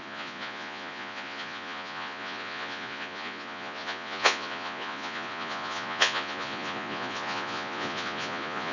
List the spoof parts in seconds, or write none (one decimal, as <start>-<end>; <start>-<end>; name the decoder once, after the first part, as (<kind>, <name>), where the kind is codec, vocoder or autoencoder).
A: 0.0-8.7 (vocoder, Vocos)